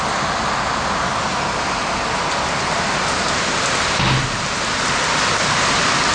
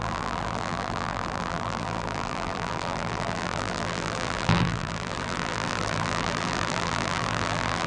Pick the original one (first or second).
first